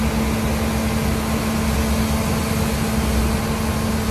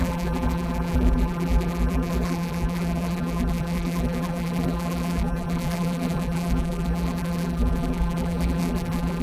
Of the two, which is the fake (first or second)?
second